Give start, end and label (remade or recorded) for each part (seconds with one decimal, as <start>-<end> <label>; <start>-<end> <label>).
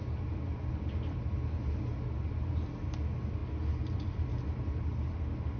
0.0-5.6 recorded